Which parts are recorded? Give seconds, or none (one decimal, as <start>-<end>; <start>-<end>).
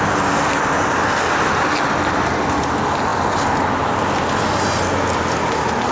0.0-5.9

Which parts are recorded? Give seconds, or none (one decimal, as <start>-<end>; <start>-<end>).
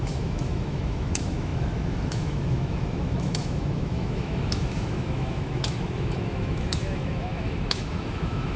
none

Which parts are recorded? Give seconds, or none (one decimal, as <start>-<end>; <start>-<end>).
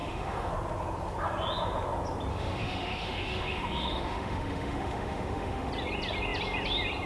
0.5-2.3; 5.7-7.1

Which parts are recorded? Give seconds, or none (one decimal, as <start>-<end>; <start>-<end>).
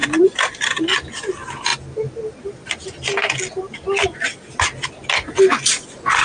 0.0-6.2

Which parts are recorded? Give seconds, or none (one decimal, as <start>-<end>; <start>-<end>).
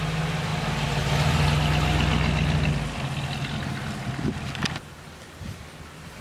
0.0-6.2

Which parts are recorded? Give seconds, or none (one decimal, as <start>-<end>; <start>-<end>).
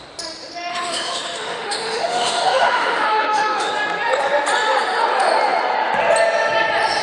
0.0-0.7; 3.7-7.0